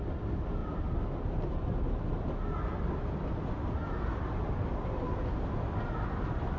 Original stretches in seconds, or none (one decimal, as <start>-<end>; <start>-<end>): 0.0-6.6